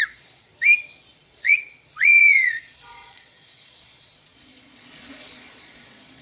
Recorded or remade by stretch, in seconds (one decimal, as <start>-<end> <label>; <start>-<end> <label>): 0.0-0.5 remade; 0.5-1.1 recorded; 1.1-6.2 remade